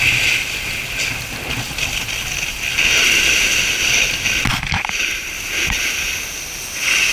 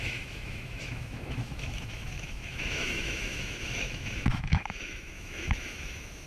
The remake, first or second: second